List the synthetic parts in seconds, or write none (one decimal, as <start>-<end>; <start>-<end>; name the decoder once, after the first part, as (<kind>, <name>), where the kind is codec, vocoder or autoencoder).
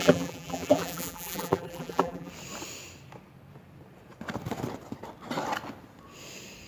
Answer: 0.0-2.3 (vocoder, BigVGAN v2)